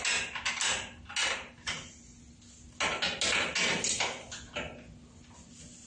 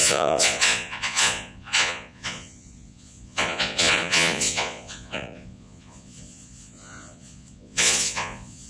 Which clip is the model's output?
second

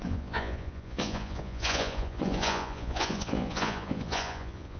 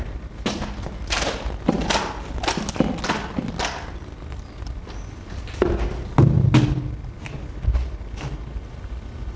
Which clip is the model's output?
first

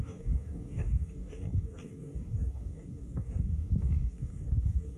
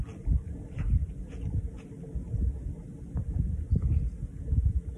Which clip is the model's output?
first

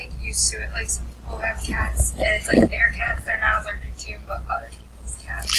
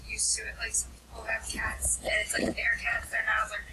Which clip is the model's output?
second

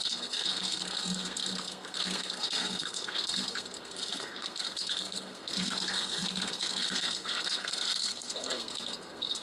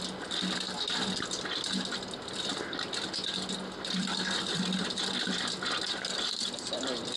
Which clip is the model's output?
first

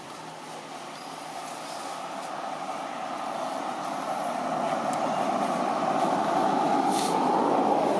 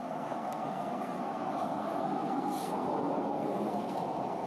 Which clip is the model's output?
second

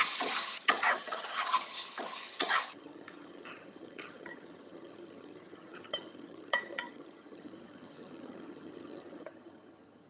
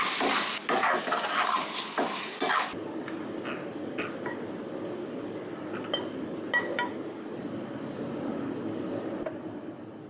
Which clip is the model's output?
first